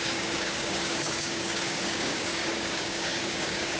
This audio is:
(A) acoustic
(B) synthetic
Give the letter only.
B